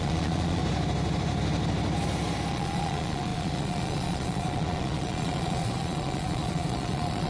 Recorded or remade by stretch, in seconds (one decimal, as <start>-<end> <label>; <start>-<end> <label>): 0.0-0.6 remade; 0.6-2.5 recorded; 2.5-7.3 remade